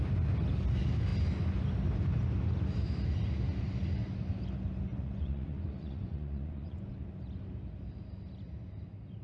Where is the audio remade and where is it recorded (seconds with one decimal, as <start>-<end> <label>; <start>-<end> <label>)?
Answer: 0.0-4.9 recorded; 4.9-6.9 remade; 6.9-9.2 recorded